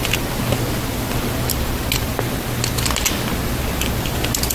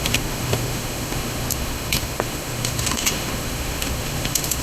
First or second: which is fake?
second